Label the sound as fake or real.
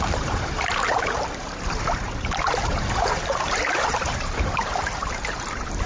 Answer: fake